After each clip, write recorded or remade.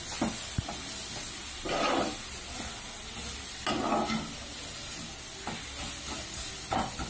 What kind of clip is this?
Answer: recorded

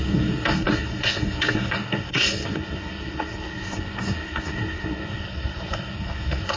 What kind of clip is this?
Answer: remade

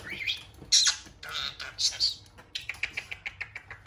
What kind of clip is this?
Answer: recorded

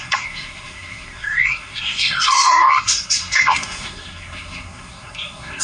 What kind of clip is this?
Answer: remade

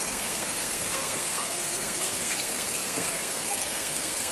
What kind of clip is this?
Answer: remade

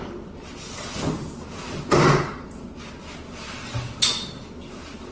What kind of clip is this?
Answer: recorded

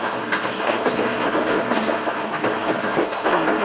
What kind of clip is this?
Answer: remade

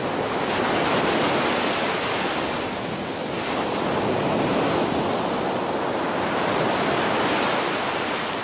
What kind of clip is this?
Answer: recorded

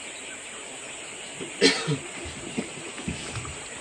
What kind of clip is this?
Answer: recorded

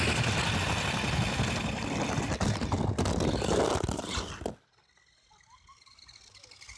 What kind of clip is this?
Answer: recorded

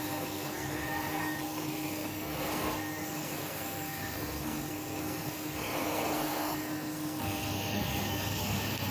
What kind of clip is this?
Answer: remade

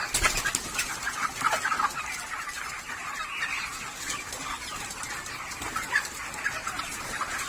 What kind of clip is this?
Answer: recorded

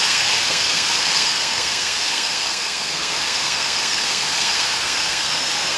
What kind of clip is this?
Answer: remade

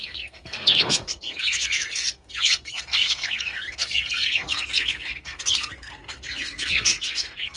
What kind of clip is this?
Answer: remade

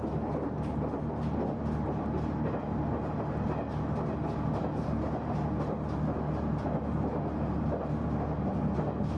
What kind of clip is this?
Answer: recorded